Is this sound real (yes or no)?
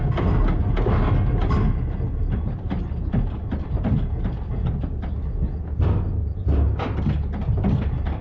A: yes